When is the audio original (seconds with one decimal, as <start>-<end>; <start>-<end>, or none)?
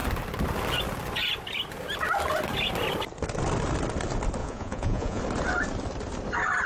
0.0-4.4; 5.2-6.7